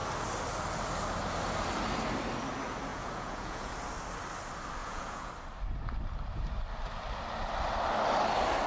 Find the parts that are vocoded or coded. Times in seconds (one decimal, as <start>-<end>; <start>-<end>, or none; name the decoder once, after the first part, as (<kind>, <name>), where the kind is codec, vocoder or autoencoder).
2.9-3.7 (vocoder, Vocos); 4.8-5.3